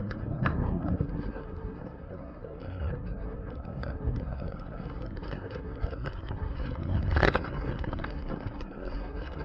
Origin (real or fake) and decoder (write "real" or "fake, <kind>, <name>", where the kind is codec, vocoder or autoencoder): fake, codec, SNAC